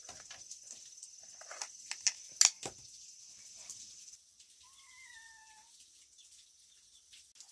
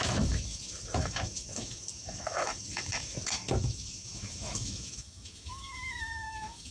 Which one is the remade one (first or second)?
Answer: second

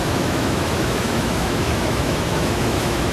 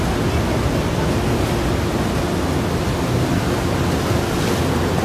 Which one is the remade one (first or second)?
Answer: first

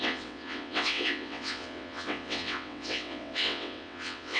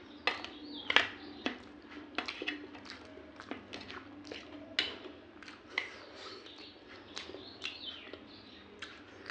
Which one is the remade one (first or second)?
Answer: first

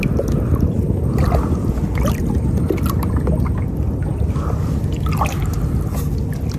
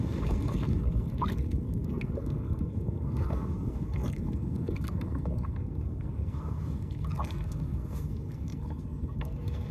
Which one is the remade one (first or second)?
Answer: second